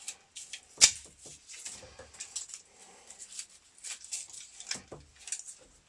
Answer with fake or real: real